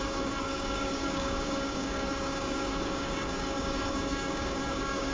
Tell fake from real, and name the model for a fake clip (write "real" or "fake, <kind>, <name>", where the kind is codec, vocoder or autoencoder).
fake, codec, DAC